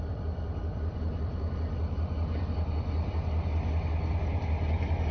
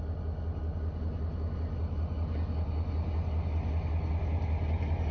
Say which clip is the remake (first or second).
first